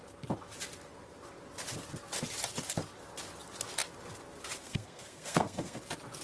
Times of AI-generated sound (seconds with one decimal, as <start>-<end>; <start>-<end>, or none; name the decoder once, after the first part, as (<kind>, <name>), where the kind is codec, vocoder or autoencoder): 4.6-5.8 (codec, SNAC)